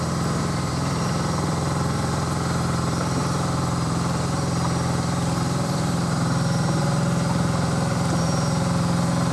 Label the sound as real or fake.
fake